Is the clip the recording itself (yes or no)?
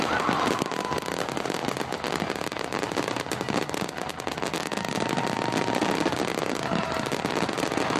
yes